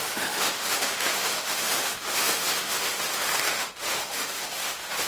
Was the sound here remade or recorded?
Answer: remade